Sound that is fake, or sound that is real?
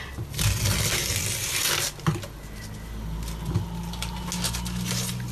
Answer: real